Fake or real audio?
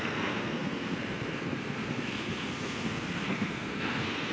fake